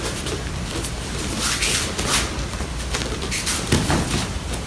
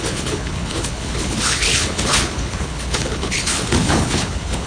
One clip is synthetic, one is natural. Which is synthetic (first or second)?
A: second